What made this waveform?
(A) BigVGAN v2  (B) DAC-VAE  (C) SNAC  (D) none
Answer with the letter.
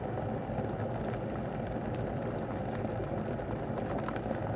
D